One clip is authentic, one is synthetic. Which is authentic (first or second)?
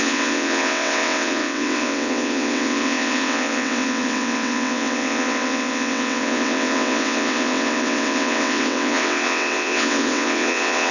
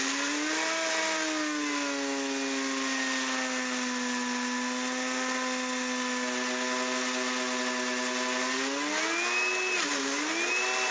second